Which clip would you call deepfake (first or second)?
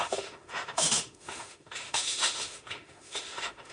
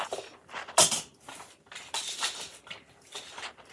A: first